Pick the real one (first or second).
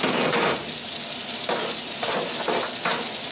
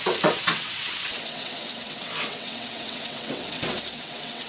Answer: first